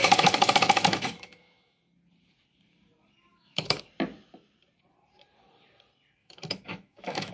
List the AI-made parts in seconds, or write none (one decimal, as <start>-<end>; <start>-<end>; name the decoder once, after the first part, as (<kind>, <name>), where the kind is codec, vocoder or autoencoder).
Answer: 0.0-1.8 (autoencoder, DAC-VAE); 3.3-3.8; 6.2-7.3

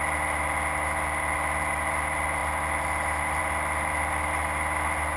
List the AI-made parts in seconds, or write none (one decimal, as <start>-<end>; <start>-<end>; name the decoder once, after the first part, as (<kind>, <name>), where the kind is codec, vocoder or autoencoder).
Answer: none